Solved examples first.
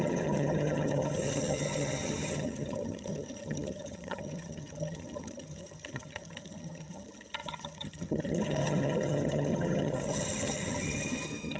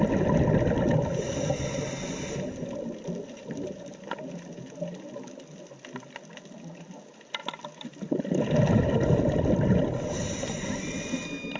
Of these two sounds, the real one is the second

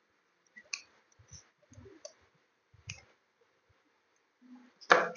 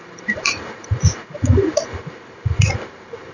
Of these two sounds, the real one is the first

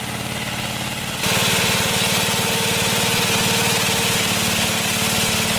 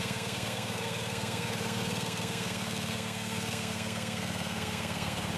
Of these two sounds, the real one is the first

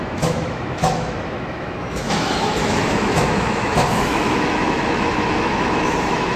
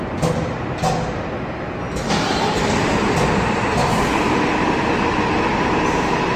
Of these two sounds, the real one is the second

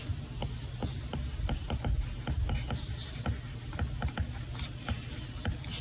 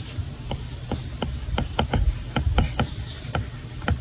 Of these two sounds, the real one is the first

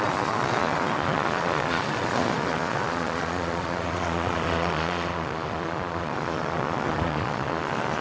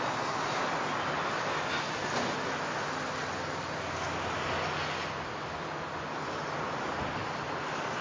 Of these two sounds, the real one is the second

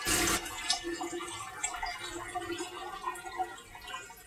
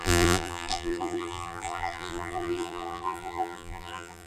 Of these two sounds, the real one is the first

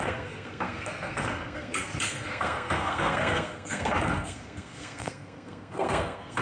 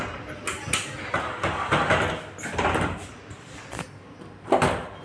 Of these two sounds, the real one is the second